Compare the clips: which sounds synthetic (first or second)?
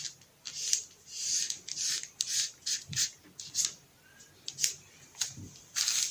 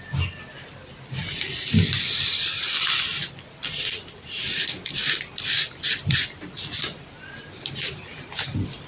second